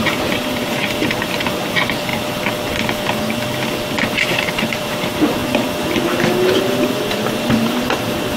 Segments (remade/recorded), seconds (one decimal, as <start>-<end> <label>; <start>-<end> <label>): 0.0-2.1 remade; 2.1-4.1 recorded; 4.1-5.4 remade; 5.4-7.0 recorded; 7.0-8.4 remade